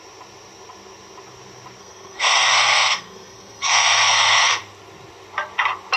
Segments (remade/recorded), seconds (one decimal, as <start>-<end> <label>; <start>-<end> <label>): 0.0-1.8 recorded; 1.8-4.6 remade; 4.6-6.0 recorded